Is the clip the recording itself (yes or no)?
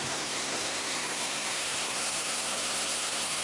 no